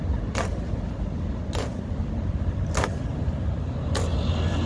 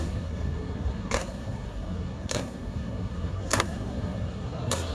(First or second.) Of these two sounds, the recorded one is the first